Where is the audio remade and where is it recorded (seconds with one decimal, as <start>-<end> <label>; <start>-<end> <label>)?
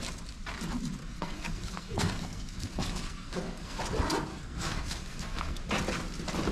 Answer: 0.0-1.0 recorded; 1.0-3.8 remade; 3.8-4.3 recorded; 4.3-5.6 remade; 5.6-6.5 recorded